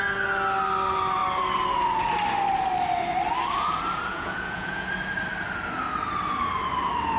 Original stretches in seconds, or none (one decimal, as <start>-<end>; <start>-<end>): 0.0-4.1; 4.9-7.2